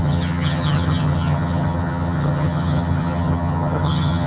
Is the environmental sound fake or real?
fake